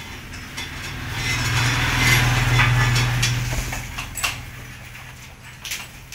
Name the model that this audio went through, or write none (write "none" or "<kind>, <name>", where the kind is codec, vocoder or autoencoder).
none